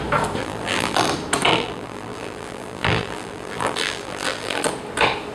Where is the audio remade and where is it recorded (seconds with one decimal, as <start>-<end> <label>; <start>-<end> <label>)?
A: 0.0-0.4 recorded; 0.4-1.1 remade; 1.1-1.5 recorded; 1.5-4.7 remade; 4.7-5.3 recorded

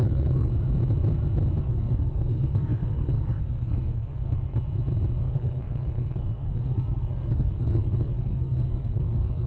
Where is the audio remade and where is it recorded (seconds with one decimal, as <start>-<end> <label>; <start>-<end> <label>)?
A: 0.0-0.5 remade; 0.5-1.6 recorded; 1.6-4.6 remade; 4.6-5.2 recorded; 5.2-9.5 remade

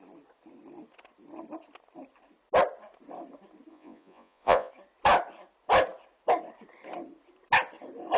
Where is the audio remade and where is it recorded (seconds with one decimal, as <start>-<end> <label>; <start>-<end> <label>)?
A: 0.0-3.7 recorded; 3.7-4.7 remade; 4.7-8.2 recorded

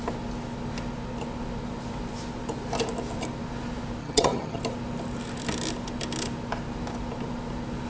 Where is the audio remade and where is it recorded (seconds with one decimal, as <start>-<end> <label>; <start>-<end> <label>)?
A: 0.0-4.0 recorded; 4.0-4.6 remade; 4.6-7.9 recorded

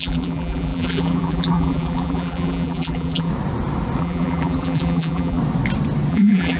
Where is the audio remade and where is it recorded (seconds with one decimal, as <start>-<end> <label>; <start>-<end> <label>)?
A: 0.0-3.3 remade; 3.3-4.0 recorded; 4.0-5.4 remade; 5.4-6.1 recorded; 6.1-6.6 remade

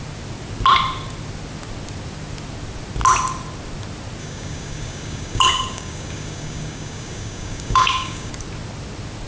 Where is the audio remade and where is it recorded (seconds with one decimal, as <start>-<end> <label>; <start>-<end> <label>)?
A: 0.0-4.2 recorded; 4.2-8.3 remade; 8.3-9.3 recorded

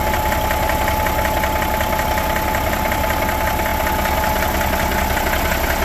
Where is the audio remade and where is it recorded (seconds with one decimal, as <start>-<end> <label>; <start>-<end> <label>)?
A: 0.0-5.8 recorded